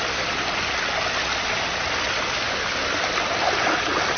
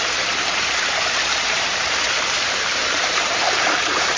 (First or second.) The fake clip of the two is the second